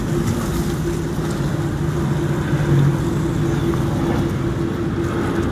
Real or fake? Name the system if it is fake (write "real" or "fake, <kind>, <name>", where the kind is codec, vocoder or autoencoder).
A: real